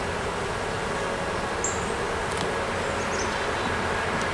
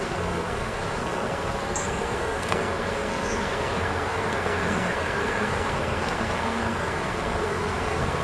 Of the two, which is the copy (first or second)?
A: second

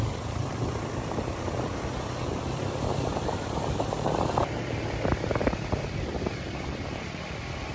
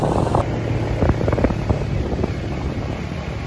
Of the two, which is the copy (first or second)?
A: first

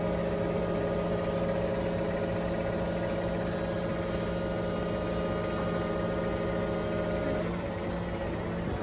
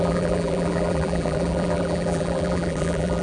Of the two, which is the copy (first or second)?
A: second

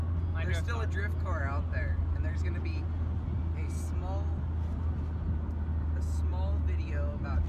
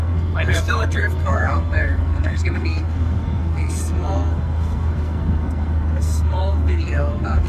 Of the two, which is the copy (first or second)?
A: second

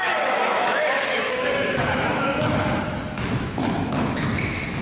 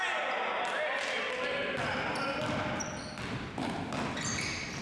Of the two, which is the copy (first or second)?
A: first